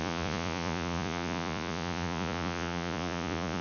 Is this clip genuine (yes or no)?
no